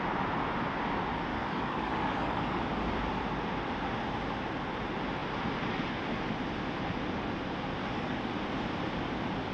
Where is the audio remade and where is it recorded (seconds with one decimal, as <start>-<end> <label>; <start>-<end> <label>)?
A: 0.0-1.3 recorded; 1.3-2.6 remade; 2.6-7.8 recorded; 7.8-8.3 remade; 8.3-9.5 recorded